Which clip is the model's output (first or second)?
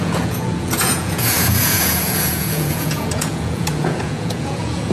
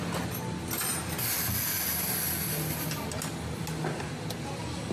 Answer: first